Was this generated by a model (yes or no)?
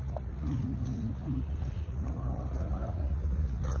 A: yes